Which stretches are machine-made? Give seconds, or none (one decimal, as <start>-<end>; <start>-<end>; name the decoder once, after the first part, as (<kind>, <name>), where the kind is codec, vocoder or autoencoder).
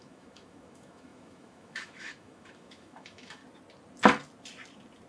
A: 0.0-3.4 (autoencoder, DAC-VAE)